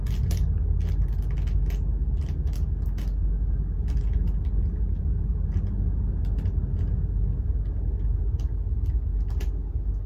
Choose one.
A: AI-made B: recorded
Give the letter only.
B